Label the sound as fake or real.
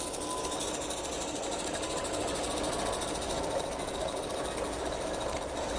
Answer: real